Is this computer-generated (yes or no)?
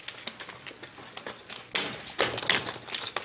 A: no